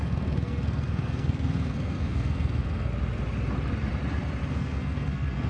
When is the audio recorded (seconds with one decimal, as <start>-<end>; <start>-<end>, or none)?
2.9-4.5